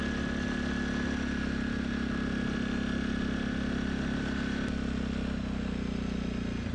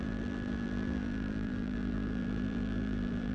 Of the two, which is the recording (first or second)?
first